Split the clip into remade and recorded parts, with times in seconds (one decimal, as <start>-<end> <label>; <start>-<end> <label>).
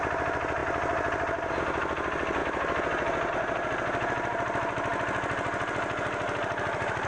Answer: 0.0-7.1 recorded